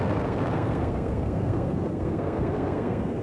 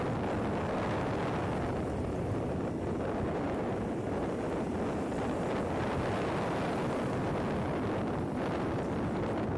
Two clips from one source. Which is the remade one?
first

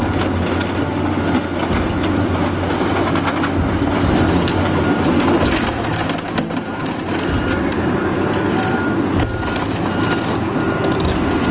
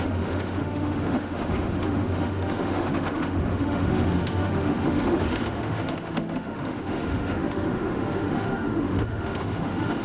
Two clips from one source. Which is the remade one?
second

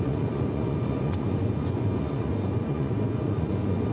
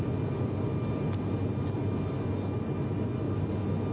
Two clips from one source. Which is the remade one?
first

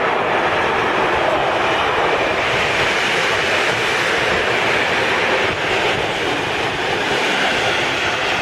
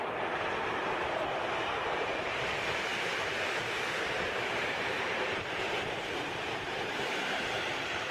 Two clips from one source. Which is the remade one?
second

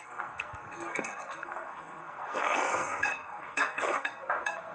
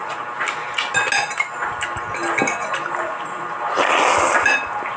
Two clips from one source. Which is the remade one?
first